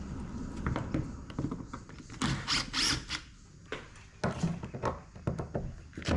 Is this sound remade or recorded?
recorded